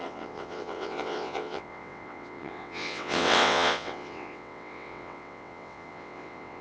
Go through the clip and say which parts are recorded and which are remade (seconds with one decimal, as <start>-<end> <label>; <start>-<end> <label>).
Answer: 0.0-6.6 remade